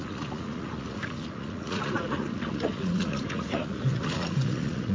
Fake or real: fake